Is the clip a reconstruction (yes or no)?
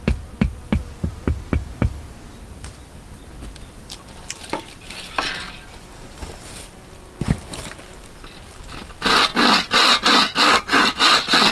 no